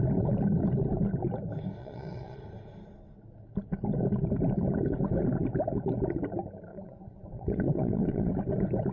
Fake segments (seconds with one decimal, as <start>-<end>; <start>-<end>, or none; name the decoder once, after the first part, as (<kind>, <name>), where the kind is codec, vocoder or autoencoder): 1.8-2.4 (vocoder, WaveNeXt); 6.7-8.3